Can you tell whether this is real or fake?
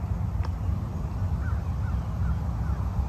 real